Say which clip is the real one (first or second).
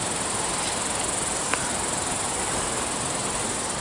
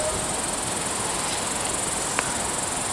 second